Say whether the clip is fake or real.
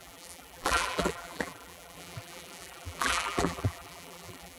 fake